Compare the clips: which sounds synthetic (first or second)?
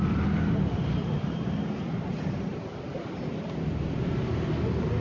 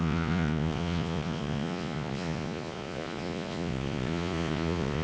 second